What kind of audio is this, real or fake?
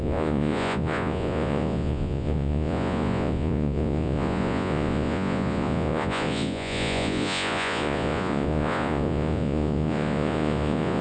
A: fake